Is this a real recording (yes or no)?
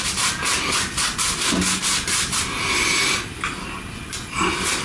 yes